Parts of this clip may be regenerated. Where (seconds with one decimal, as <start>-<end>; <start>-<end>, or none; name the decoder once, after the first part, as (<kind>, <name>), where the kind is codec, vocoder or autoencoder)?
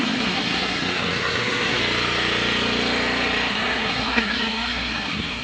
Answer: 0.0-1.8 (codec, SNAC); 3.5-5.4